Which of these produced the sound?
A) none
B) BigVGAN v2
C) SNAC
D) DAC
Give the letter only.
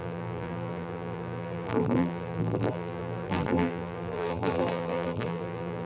B